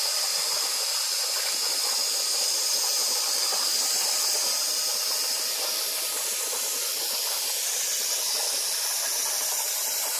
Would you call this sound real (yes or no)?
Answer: yes